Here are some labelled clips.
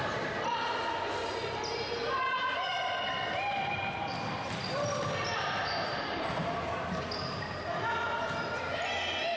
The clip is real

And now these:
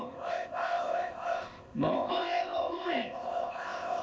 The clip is fake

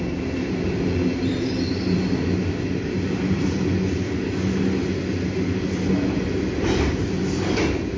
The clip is real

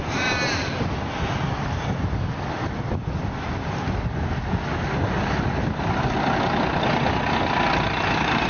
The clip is real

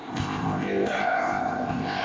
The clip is fake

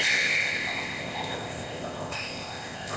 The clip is fake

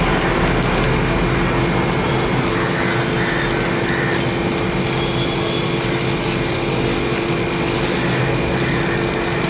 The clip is real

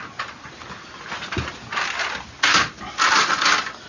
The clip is real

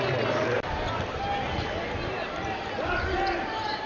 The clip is real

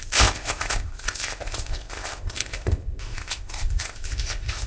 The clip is fake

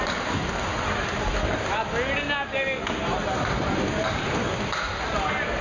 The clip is real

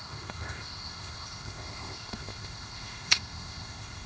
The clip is fake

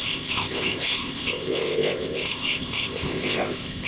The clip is fake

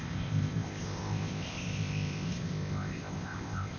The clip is fake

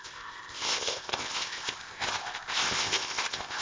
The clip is fake